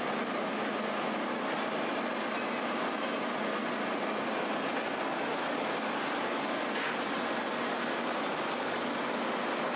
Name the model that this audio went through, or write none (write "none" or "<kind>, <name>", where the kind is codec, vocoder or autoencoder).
none